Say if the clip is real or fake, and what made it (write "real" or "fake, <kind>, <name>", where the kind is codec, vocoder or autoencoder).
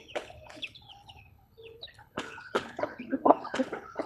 fake, codec, HILCodec